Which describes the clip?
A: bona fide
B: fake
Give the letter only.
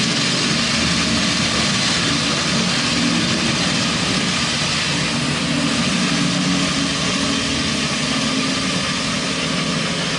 A